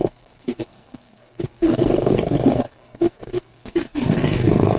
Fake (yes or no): yes